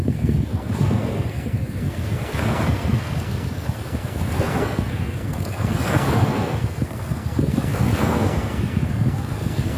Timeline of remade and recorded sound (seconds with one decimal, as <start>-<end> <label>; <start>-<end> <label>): 0.0-9.8 remade